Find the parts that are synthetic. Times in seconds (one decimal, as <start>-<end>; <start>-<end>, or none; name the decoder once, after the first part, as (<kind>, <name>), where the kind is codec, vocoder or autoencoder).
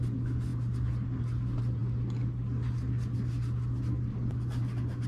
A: none